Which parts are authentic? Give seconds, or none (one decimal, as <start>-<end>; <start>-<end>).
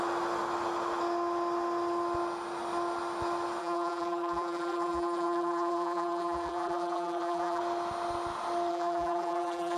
0.0-3.6; 7.6-8.7